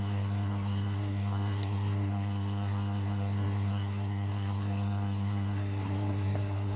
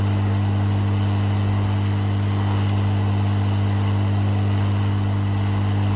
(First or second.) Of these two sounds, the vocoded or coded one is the first